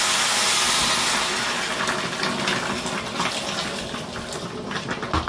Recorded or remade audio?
recorded